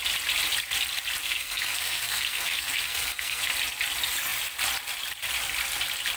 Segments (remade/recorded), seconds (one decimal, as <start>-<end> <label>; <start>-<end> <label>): 0.0-1.2 recorded; 1.2-3.5 remade; 3.5-6.2 recorded